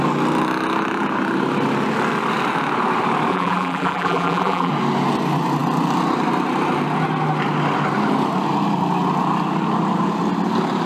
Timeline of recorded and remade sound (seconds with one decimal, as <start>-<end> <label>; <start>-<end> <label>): 0.0-3.3 recorded; 3.3-4.7 remade; 4.7-10.9 recorded